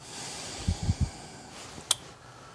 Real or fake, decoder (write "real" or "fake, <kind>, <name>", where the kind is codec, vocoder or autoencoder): real